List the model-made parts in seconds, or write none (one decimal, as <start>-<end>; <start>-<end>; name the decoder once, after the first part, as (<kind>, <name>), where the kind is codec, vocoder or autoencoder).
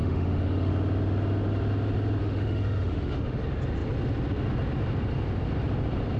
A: 0.0-0.7 (autoencoder, DAC-VAE); 2.2-3.4